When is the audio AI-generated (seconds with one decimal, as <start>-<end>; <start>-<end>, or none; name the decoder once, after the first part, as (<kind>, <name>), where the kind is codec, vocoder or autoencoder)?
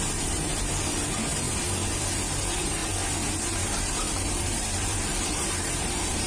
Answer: 0.0-0.5 (vocoder, BigVGAN v2); 2.4-2.8; 3.4-6.3